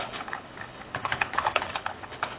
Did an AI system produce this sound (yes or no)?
yes